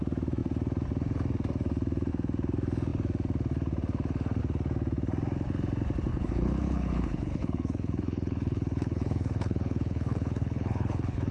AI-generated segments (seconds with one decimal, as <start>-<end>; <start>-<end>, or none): 6.1-11.3